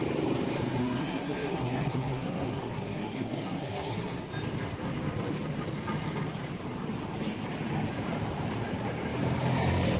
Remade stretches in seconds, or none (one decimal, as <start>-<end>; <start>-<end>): 0.8-4.2